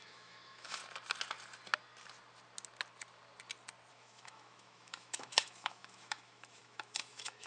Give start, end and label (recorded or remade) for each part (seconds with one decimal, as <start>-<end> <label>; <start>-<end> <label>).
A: 0.0-0.8 remade; 0.8-3.9 recorded; 3.9-7.5 remade